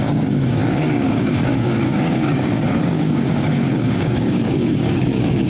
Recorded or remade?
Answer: remade